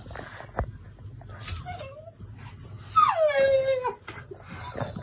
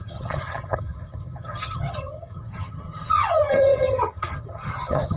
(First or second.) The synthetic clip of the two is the second